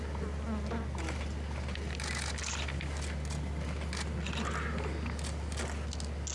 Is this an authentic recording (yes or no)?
yes